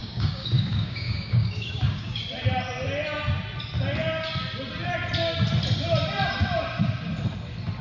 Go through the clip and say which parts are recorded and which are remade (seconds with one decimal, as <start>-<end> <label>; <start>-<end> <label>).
0.0-2.2 remade; 2.2-7.8 recorded